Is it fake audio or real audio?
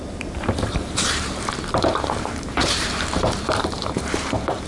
fake